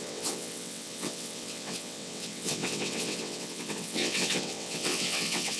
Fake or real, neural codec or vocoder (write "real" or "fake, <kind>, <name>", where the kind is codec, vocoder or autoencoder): fake, vocoder, WaveNeXt